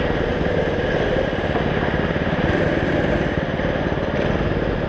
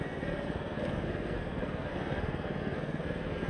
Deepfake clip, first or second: second